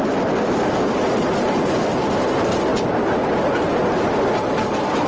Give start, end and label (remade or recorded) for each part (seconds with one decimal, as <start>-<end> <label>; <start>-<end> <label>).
0.0-5.1 recorded